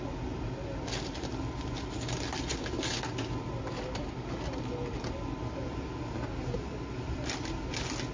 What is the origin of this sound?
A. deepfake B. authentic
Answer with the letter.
B